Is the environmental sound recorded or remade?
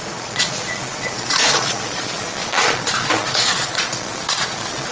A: remade